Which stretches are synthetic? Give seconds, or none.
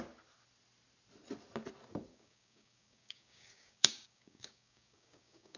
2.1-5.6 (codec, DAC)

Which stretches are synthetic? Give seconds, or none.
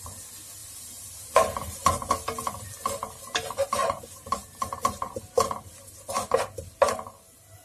0.6-2.1 (vocoder, BigVGAN v2); 3.8-5.2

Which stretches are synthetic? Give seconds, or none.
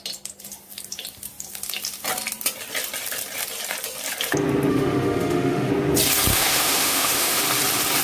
4.7-5.7 (autoencoder, DAC-VAE); 6.3-7.4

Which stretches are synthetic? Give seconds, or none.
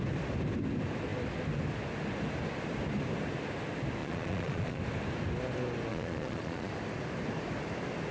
4.0-4.8 (vocoder, Vocos); 5.9-6.7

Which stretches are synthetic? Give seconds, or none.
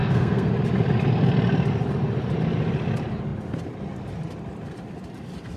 0.0-0.5 (codec, SNAC)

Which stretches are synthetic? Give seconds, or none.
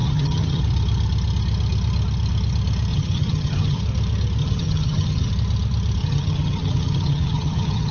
0.0-0.6 (vocoder, HiFi-GAN); 2.9-3.8; 4.4-5.3; 6.0-7.9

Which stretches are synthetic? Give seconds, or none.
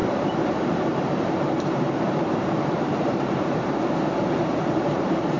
0.0-3.8 (vocoder, BigVGAN v2); 4.4-5.4